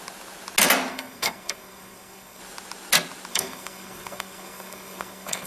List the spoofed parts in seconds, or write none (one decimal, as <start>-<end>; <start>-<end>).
0.9-2.4; 3.3-5.5